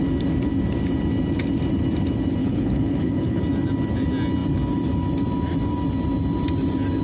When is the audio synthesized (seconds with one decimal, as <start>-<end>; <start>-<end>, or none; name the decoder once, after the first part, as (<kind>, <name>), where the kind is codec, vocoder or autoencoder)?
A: 2.4-3.4 (codec, HILCodec)